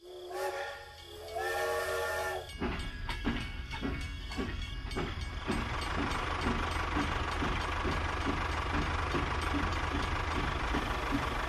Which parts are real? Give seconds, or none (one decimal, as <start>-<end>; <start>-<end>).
0.0-2.9; 4.7-11.5